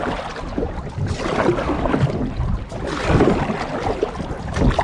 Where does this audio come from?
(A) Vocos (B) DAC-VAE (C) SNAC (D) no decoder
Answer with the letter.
D